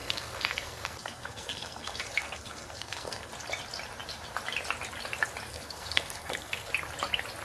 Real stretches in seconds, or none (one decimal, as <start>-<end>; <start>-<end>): 3.3-5.5; 6.7-7.4